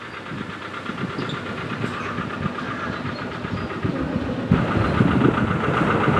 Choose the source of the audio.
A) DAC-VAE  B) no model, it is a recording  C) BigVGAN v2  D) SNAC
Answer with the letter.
B